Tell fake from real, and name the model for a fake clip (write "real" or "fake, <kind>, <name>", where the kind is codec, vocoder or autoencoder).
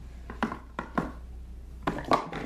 real